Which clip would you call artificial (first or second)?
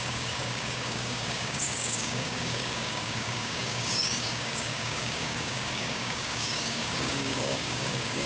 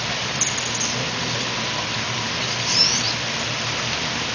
first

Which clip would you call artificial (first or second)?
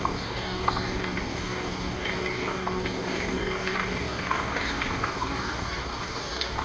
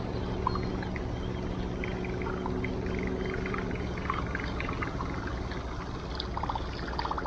first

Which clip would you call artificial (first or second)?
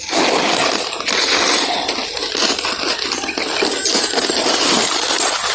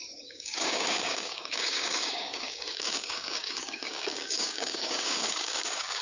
second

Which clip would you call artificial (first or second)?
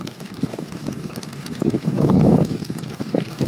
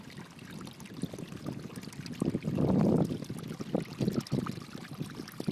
first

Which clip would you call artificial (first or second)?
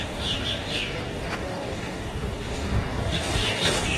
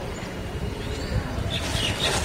first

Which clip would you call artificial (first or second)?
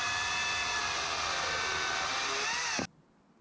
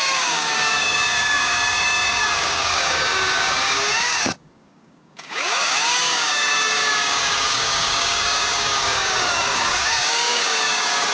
second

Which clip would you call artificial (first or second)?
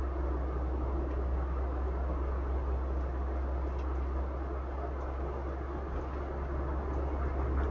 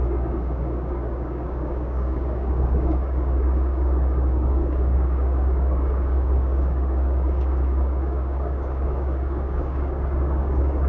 second